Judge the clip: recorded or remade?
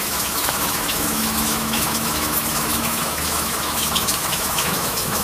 remade